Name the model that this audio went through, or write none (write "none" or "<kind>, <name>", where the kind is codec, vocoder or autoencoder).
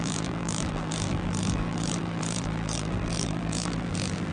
vocoder, BigVGAN v2